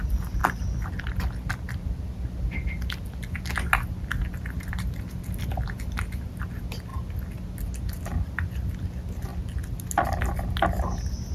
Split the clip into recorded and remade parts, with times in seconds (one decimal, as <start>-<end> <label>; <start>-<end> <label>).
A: 0.0-11.3 recorded